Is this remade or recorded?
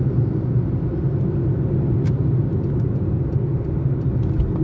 recorded